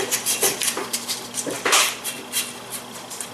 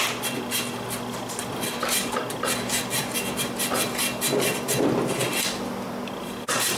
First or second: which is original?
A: second